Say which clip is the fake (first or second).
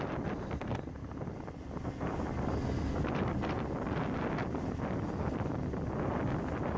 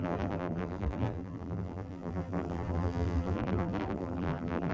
second